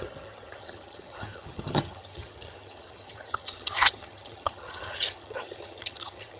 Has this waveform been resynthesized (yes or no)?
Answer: yes